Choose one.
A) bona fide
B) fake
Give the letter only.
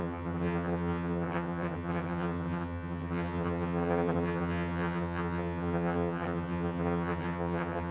B